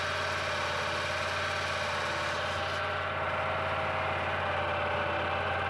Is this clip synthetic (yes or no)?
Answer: no